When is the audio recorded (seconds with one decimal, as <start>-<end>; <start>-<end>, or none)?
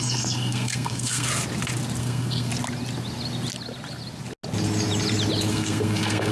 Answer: 1.3-2.0; 2.5-5.5